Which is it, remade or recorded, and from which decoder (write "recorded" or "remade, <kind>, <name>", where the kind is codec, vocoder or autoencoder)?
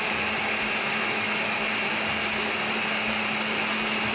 recorded